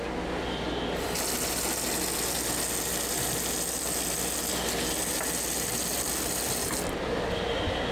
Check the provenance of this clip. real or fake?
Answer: real